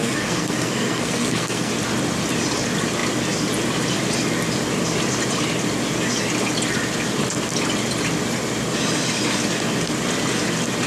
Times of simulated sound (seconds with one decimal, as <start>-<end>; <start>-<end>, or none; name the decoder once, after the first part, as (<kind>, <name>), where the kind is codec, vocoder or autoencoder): 0.0-1.7 (codec, SNAC)